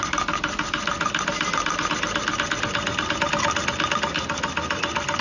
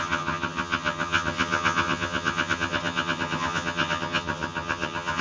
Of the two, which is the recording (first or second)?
first